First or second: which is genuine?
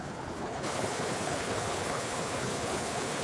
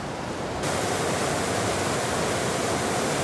second